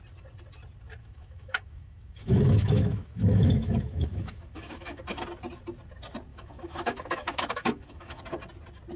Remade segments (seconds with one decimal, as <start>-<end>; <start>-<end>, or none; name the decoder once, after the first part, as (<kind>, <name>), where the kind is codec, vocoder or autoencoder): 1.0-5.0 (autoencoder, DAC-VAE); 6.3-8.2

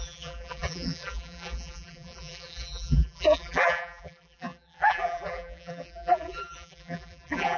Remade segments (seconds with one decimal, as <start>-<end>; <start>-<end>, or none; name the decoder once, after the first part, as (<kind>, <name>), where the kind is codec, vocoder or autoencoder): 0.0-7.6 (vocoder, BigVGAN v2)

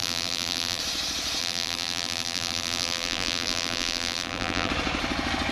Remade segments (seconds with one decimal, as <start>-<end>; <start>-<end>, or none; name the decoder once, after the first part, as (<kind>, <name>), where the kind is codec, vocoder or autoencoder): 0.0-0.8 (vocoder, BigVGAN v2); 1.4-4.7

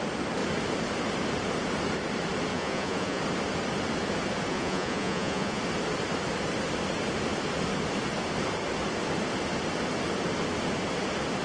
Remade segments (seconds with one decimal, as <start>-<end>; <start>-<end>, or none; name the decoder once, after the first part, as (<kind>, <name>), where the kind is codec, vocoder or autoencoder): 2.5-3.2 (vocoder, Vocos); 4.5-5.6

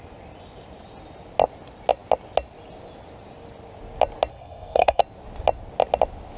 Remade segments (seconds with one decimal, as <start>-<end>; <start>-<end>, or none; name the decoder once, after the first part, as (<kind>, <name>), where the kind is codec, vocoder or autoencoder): 4.3-5.0 (codec, SNAC)

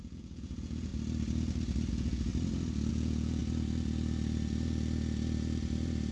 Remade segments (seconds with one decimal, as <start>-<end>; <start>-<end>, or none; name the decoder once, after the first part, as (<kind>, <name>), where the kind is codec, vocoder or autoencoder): 0.0-0.9 (vocoder, Vocos); 1.9-2.3; 2.9-3.4

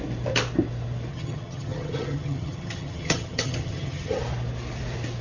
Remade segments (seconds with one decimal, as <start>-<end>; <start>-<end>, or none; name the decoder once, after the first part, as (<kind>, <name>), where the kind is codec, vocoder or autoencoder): 1.1-4.2 (vocoder, HiFi-GAN)

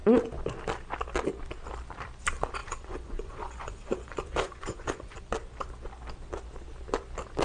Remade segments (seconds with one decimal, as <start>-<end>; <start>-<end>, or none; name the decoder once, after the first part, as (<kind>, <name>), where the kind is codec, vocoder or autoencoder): 2.6-5.2 (vocoder, Vocos)